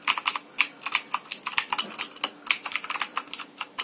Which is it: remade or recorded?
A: recorded